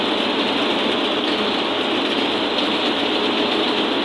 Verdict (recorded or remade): recorded